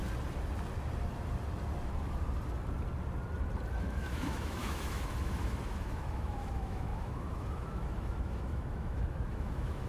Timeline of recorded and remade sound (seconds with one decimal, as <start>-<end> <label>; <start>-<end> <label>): 0.0-3.8 recorded; 3.8-9.9 remade